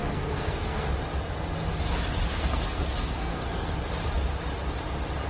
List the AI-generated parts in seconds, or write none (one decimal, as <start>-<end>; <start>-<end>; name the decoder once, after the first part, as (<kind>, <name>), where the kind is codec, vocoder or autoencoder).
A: 0.0-0.9 (codec, SNAC); 2.3-3.7

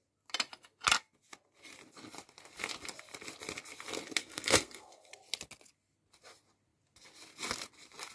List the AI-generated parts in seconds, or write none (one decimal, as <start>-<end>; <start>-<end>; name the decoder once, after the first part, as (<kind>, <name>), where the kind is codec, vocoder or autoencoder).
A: 4.2-5.1 (codec, SNAC)